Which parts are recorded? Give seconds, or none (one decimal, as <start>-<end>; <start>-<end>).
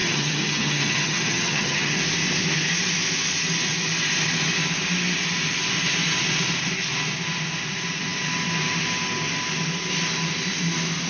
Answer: 2.0-11.1